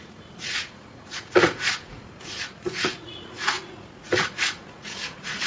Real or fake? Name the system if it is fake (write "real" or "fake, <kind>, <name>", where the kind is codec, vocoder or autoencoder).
fake, vocoder, Vocos